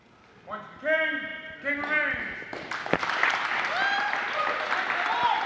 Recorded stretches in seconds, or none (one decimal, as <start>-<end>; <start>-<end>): 0.0-5.5